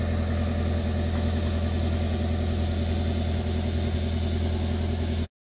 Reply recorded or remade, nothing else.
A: recorded